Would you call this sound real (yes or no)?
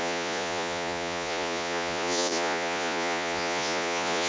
no